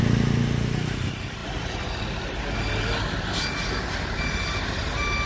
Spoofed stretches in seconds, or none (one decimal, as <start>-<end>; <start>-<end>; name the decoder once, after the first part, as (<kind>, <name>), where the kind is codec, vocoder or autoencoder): none